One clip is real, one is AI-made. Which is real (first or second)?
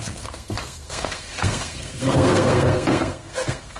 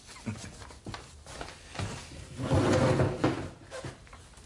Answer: second